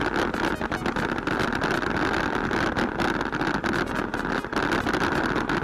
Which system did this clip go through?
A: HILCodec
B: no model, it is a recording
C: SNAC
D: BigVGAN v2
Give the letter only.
B